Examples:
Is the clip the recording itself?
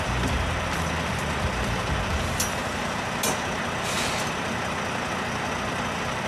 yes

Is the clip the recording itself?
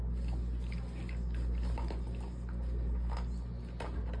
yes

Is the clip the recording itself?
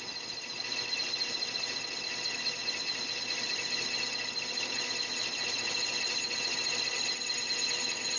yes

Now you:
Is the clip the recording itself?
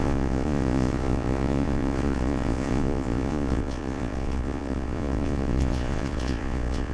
no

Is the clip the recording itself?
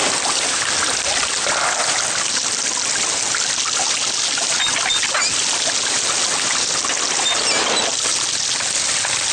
yes